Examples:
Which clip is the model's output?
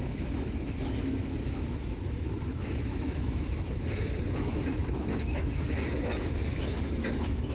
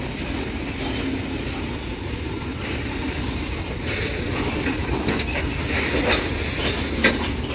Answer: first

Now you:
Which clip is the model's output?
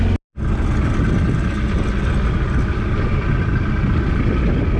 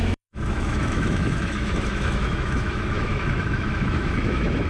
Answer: second